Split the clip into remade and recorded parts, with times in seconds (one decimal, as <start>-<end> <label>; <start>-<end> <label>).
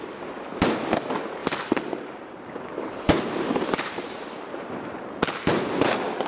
0.0-1.4 recorded; 1.4-5.2 remade; 5.2-6.3 recorded